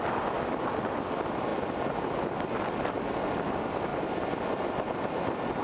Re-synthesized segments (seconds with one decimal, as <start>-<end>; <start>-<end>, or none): none